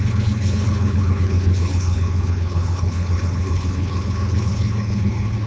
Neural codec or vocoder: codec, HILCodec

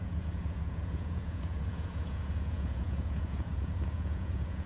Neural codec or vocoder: vocoder, Vocos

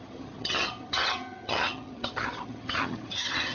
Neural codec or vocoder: vocoder, HiFi-GAN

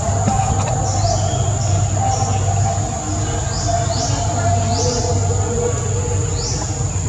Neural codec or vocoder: none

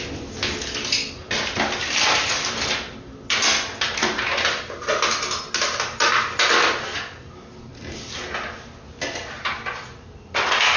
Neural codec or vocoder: none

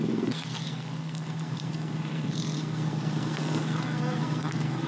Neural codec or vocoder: codec, SNAC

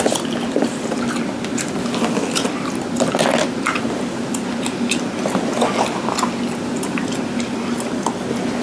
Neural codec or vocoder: none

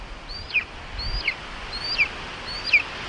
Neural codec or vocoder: none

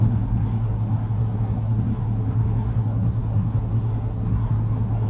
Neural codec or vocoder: codec, SNAC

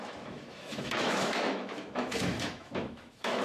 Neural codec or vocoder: autoencoder, DAC-VAE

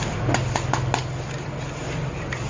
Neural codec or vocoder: none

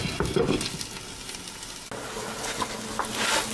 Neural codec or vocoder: none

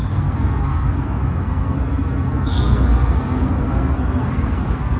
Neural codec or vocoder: codec, SNAC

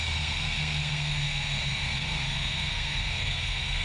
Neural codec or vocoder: codec, SNAC